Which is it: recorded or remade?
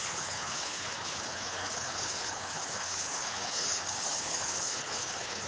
remade